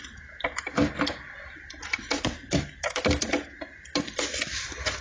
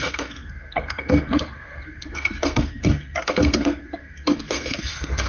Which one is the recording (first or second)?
first